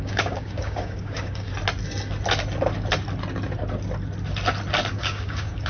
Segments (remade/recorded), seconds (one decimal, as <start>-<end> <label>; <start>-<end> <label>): 0.0-1.5 remade; 1.5-4.9 recorded; 4.9-5.7 remade